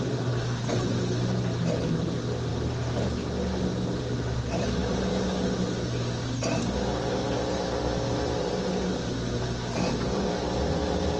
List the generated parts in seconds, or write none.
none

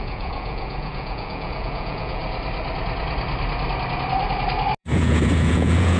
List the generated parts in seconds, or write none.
0.0-2.2 (vocoder, Vocos); 4.8-6.0

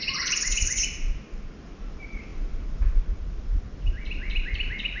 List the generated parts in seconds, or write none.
none

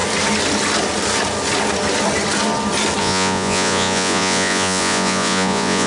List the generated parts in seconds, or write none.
3.0-5.9 (vocoder, Vocos)

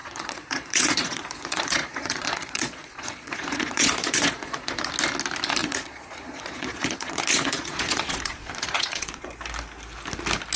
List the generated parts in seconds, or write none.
0.0-4.9 (vocoder, Vocos); 5.6-9.3

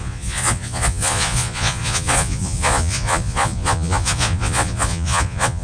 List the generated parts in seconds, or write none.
0.0-5.6 (vocoder, Vocos)